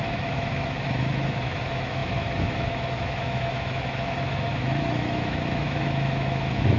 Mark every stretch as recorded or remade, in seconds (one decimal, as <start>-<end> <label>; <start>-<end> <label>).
0.0-6.8 remade